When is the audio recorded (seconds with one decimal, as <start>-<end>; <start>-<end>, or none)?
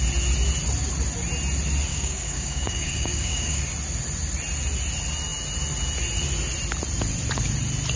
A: 0.0-1.9; 3.6-8.0